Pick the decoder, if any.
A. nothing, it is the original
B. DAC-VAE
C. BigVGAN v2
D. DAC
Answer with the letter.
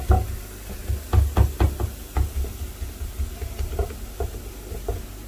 A